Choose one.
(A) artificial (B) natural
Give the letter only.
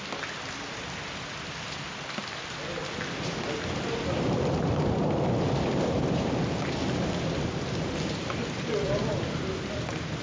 B